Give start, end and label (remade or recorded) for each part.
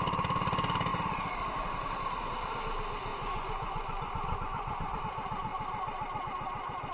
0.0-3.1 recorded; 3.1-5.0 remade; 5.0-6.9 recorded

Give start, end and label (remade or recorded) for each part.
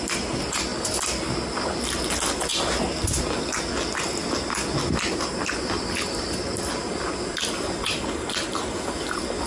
0.0-9.5 recorded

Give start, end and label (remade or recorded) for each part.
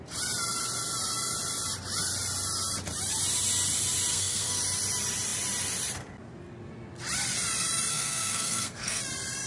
0.0-4.1 recorded; 4.1-4.6 remade; 4.6-7.9 recorded; 7.9-9.0 remade; 9.0-9.5 recorded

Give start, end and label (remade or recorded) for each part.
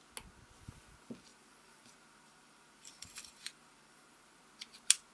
0.0-1.3 recorded; 1.3-4.4 remade; 4.4-5.1 recorded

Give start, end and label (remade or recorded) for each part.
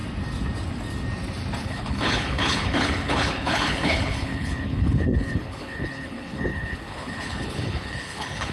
0.0-1.6 recorded; 1.6-8.5 remade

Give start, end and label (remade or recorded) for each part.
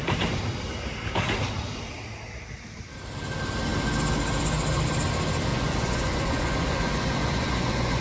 0.0-5.5 recorded; 5.5-8.0 remade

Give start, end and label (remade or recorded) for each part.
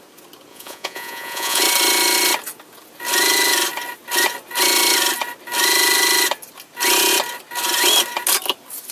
0.0-0.5 recorded; 0.5-1.6 remade; 1.6-8.9 recorded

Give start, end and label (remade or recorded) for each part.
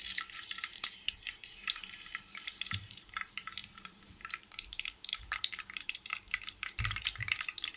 0.0-7.8 remade